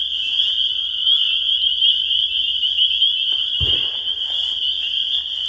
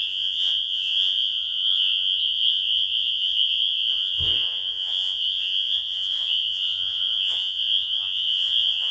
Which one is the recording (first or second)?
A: first